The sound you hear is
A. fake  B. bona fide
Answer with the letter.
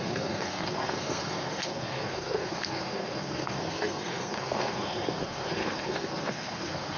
A